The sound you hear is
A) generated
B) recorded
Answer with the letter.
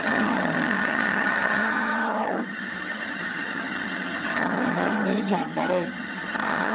A